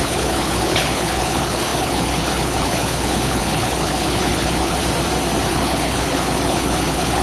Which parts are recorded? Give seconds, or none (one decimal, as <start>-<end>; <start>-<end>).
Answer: 4.8-5.5